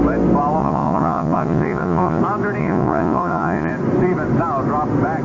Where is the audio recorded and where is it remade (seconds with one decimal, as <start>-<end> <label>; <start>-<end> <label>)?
0.0-0.6 recorded; 0.6-2.2 remade; 2.2-2.6 recorded; 2.6-3.7 remade; 3.7-5.2 recorded